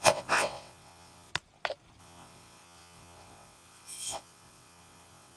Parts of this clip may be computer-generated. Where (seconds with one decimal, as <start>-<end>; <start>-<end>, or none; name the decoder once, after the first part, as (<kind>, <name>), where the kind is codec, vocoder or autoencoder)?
0.0-1.3 (vocoder, WaveNeXt); 2.0-5.4